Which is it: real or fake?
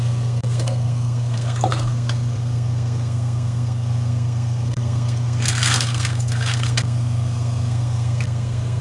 fake